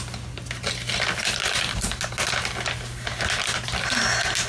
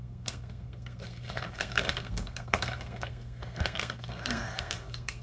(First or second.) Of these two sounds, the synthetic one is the second